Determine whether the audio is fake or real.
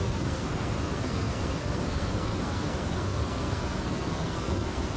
fake